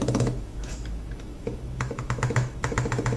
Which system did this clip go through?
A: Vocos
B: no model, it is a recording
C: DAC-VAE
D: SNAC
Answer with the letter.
C